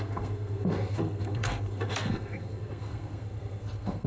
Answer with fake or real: fake